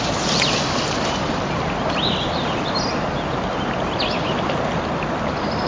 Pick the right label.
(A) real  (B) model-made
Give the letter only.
A